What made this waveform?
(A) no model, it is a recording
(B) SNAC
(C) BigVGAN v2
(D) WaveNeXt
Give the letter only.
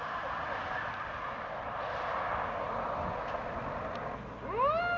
A